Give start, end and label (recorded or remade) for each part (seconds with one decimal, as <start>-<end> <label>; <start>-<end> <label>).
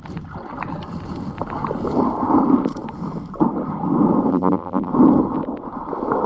0.0-4.3 recorded; 4.3-4.9 remade; 4.9-6.3 recorded